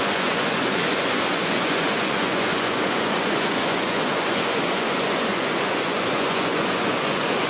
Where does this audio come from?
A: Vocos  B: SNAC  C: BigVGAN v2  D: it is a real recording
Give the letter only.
A